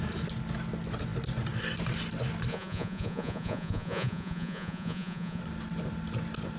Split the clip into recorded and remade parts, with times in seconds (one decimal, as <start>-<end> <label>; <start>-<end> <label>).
0.0-2.5 recorded; 2.5-5.4 remade; 5.4-6.6 recorded